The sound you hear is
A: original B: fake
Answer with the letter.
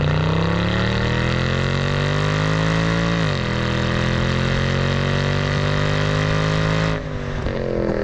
A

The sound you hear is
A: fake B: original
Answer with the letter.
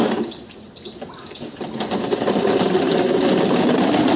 B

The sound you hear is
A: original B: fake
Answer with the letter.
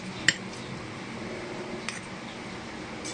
A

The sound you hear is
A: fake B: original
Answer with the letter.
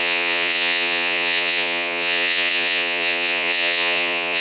A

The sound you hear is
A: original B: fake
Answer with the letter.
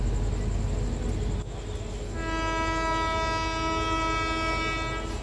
A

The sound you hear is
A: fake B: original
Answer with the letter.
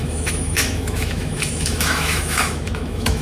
A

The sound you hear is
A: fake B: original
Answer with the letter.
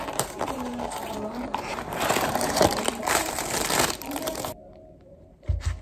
A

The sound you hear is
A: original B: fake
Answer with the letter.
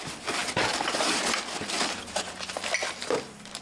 A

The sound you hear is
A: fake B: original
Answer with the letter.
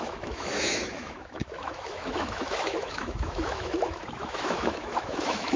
A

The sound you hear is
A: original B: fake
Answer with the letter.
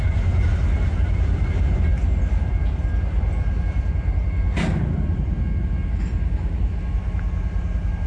A